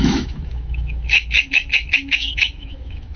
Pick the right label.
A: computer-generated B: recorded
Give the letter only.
A